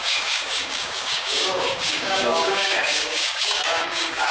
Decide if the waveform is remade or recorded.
remade